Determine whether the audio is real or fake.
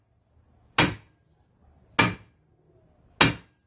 real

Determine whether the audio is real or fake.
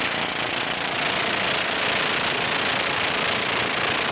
real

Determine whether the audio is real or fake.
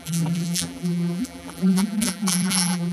fake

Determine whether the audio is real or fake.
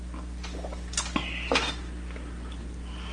real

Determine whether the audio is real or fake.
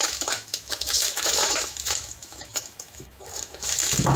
fake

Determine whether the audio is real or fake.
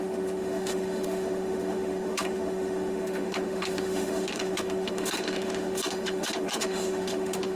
fake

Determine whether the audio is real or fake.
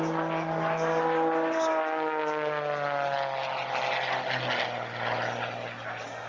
real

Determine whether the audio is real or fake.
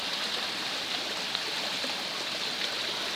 real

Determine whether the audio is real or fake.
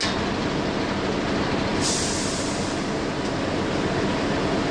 real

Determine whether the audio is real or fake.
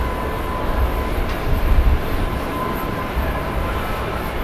real